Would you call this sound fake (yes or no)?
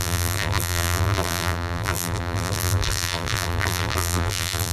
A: yes